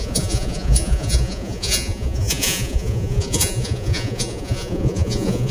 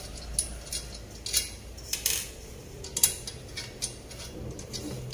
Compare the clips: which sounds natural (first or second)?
second